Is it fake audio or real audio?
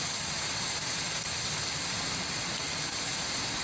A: real